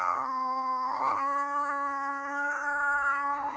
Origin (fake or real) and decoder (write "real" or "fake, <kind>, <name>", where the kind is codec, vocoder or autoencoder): fake, codec, SNAC